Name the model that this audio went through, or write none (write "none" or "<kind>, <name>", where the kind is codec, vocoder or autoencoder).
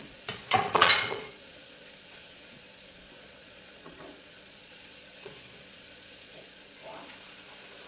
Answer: vocoder, Vocos